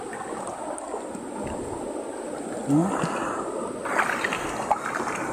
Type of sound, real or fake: real